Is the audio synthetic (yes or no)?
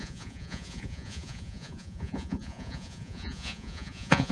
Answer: yes